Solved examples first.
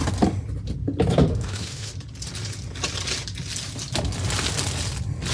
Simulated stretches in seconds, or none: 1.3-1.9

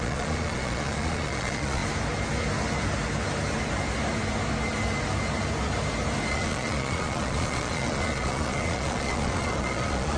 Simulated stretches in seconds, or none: 0.0-1.8; 6.3-10.2

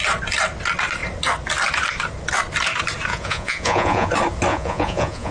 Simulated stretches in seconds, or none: 3.1-4.1; 4.5-5.3

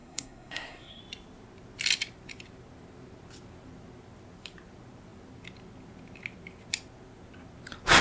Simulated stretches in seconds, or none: 0.0-1.0

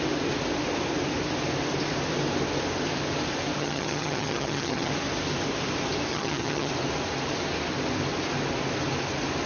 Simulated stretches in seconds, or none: 3.6-4.9; 6.1-6.7

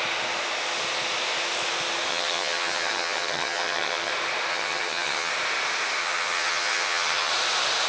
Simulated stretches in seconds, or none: 2.1-4.1; 4.5-5.3; 6.0-7.3